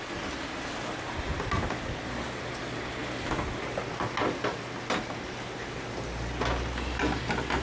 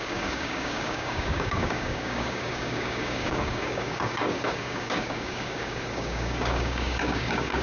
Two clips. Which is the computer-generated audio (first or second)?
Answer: second